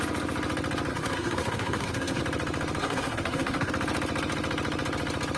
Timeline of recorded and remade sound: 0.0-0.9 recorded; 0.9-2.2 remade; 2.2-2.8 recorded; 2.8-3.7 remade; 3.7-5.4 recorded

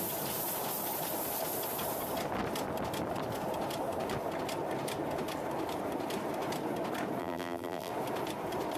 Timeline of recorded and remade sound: 0.0-7.2 recorded; 7.2-7.9 remade; 7.9-8.8 recorded

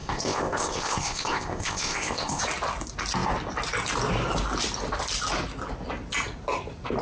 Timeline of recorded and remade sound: 0.0-2.4 remade; 2.4-7.0 recorded

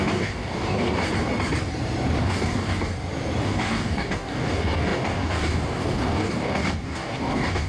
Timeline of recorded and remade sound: 0.0-1.0 remade; 1.0-2.2 recorded; 2.2-2.9 remade; 2.9-3.4 recorded; 3.4-7.7 remade

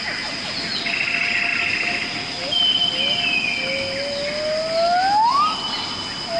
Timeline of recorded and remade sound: 0.0-6.4 recorded

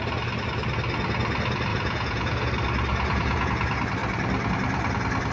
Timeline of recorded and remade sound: 0.0-1.7 recorded; 1.7-2.5 remade; 2.5-2.9 recorded; 2.9-3.5 remade; 3.5-5.3 recorded